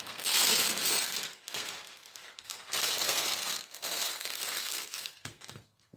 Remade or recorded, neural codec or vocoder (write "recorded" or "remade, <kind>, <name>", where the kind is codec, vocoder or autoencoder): remade, codec, SNAC